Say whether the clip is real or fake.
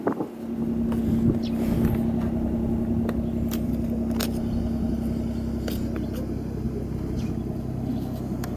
real